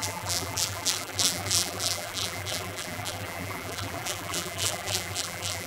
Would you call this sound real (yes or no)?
no